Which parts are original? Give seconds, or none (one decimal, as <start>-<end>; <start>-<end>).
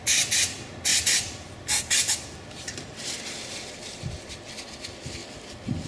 0.0-0.9; 4.4-5.2